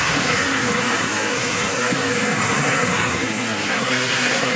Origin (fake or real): fake